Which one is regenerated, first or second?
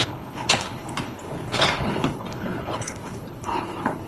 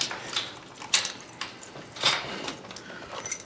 first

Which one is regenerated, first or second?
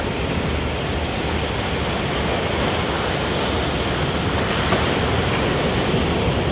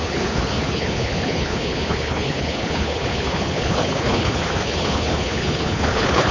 second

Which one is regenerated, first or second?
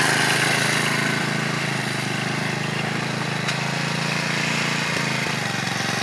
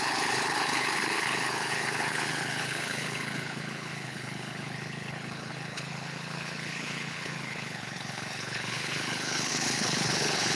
second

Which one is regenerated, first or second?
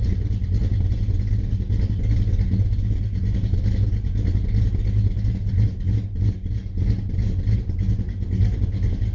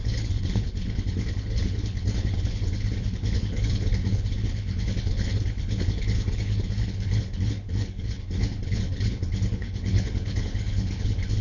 second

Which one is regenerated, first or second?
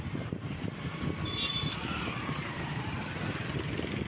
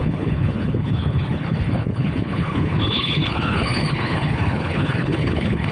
second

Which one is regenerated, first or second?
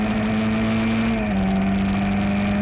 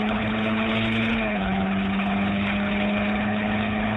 second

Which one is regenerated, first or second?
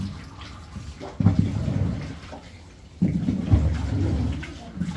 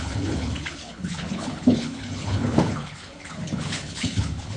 second